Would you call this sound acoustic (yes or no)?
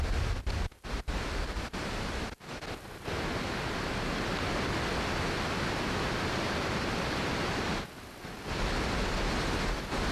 yes